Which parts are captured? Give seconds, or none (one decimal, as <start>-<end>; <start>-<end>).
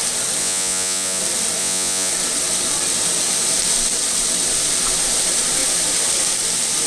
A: 0.0-0.4; 1.2-1.6; 2.1-6.9